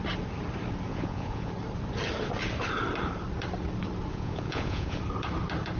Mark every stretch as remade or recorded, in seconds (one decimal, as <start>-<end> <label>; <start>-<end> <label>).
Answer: 0.0-0.9 recorded; 0.9-1.5 remade; 1.5-4.1 recorded; 4.1-5.0 remade; 5.0-5.8 recorded